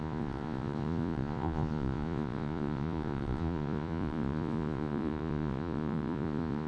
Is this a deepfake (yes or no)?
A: yes